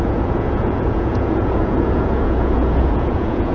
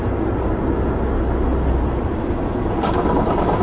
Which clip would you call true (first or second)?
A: second